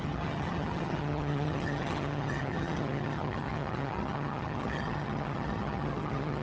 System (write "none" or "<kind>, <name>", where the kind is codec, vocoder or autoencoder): vocoder, HiFi-GAN